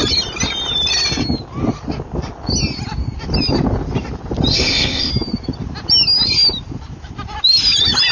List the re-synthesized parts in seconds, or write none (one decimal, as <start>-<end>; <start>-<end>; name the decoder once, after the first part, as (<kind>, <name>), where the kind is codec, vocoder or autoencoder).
4.5-5.1 (codec, ZipCodec)